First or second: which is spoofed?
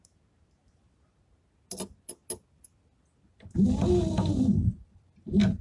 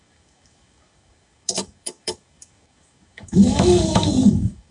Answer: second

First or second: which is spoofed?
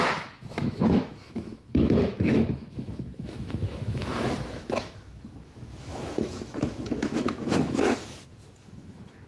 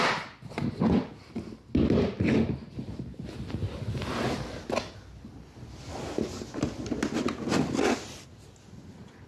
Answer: first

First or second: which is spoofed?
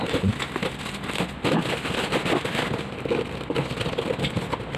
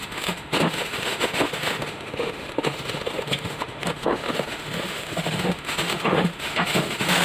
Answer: second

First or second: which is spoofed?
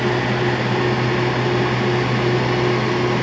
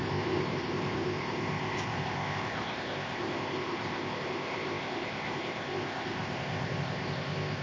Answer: second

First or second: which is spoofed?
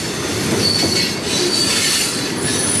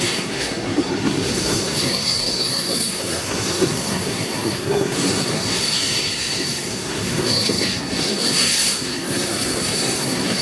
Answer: second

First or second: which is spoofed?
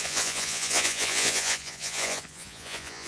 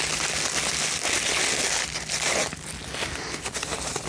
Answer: first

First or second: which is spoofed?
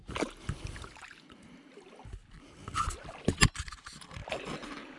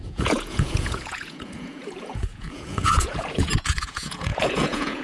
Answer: second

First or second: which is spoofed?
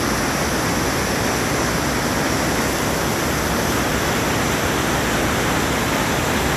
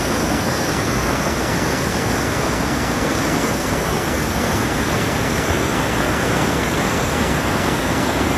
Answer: second